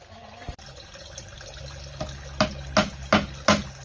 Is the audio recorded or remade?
recorded